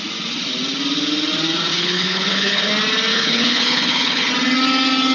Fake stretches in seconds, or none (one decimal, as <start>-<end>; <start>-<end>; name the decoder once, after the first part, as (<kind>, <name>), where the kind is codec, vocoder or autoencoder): 1.7-2.7 (codec, HILCodec); 3.1-4.3